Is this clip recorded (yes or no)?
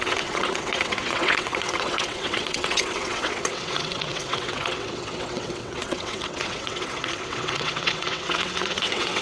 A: no